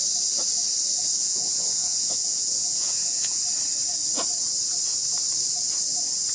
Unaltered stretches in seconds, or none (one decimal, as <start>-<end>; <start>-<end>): 0.0-1.2; 3.4-6.3